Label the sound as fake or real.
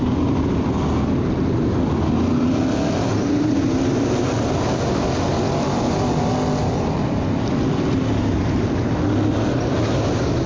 real